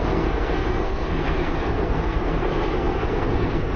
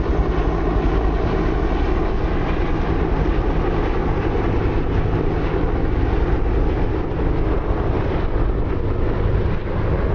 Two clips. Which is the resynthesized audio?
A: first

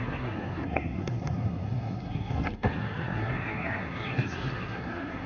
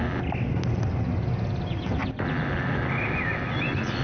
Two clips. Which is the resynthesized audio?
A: first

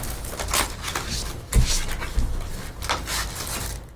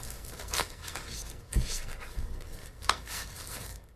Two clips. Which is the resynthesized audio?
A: second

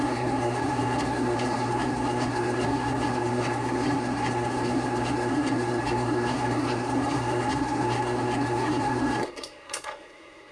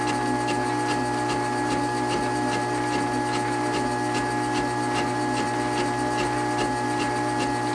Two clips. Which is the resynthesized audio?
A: first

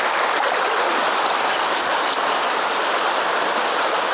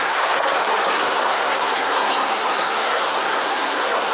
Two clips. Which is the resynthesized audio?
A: second